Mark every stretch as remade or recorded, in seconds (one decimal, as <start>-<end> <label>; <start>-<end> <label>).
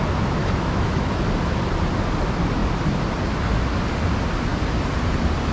0.0-0.4 recorded; 0.4-1.3 remade; 1.3-5.5 recorded